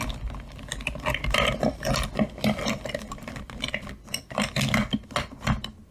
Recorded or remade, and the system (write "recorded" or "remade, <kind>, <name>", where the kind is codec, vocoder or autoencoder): recorded